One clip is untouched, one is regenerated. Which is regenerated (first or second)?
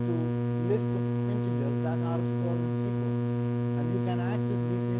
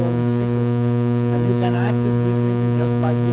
second